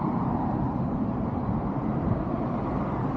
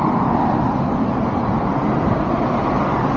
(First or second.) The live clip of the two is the second